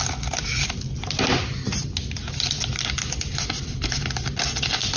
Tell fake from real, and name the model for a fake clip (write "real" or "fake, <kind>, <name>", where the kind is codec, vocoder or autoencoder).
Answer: real